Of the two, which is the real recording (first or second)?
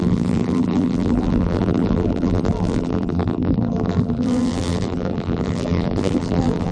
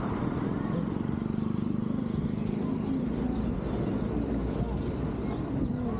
second